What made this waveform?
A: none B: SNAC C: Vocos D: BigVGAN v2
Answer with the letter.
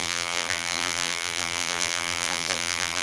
D